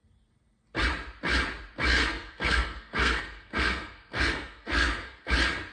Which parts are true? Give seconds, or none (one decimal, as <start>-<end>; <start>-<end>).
0.0-1.9; 5.3-5.7